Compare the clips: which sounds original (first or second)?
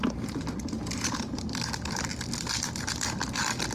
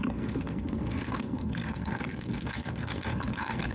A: first